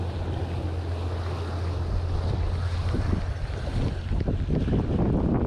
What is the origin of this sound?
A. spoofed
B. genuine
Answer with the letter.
B